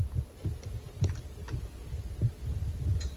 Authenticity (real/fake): real